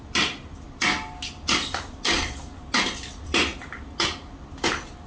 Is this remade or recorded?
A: recorded